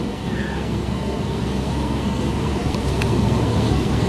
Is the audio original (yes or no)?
no